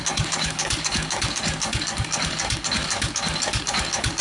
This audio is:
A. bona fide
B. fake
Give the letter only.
B